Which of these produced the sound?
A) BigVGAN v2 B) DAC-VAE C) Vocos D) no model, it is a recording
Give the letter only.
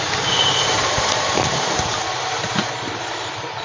A